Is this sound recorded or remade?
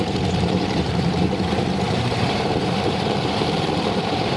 remade